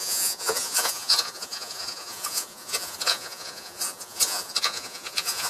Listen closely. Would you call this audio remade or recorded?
remade